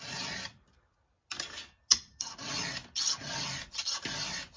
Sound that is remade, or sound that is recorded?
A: recorded